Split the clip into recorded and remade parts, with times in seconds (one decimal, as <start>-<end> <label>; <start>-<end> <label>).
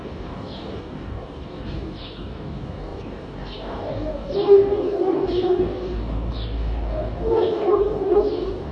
0.0-8.7 remade